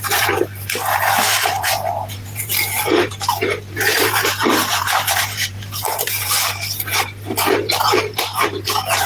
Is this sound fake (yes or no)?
yes